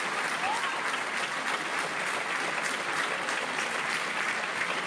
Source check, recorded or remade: recorded